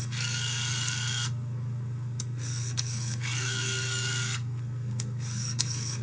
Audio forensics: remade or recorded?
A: remade